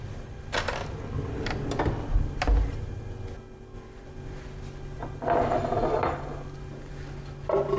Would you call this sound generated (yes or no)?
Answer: no